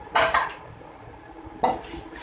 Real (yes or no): no